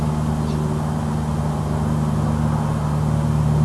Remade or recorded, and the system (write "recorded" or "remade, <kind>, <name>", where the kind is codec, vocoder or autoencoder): recorded